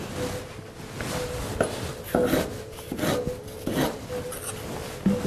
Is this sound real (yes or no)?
yes